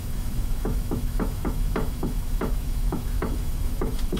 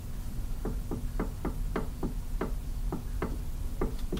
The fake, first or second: first